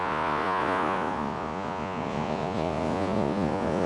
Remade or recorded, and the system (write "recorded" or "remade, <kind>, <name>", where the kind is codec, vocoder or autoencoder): remade, vocoder, Vocos